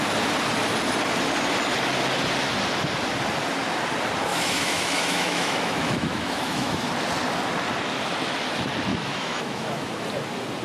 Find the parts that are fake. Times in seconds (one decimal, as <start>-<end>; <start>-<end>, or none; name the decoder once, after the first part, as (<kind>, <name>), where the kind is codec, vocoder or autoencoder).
4.3-6.9 (autoencoder, DAC-VAE); 8.9-9.9